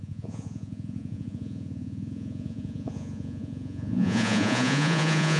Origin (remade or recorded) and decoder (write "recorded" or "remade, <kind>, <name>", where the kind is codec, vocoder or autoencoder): remade, vocoder, Vocos